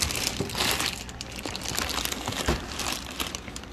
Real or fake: real